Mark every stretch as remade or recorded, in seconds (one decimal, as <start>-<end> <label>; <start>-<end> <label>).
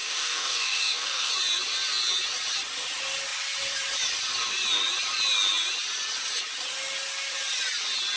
0.0-1.3 remade; 1.3-8.2 recorded